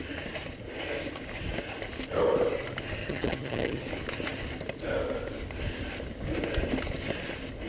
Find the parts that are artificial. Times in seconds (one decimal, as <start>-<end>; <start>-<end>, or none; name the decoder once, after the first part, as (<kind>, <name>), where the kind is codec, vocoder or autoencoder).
3.0-3.8 (vocoder, HiFi-GAN)